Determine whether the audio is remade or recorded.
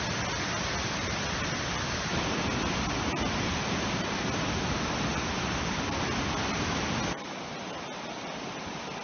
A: recorded